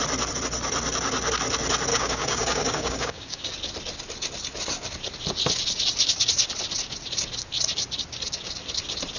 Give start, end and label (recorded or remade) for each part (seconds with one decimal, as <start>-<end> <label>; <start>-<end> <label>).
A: 0.0-1.9 recorded; 1.9-3.5 remade; 3.5-9.2 recorded